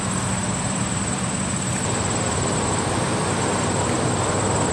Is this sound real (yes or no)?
yes